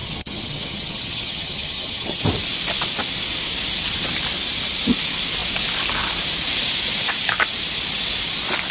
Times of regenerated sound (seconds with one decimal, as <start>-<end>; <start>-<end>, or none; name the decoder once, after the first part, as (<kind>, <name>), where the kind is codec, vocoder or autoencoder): 0.0-2.2 (vocoder, HiFi-GAN)